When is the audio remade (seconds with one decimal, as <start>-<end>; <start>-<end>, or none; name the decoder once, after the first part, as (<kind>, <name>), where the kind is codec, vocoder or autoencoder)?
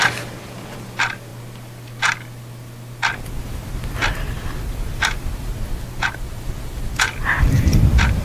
0.0-1.3 (vocoder, BigVGAN v2); 6.2-8.2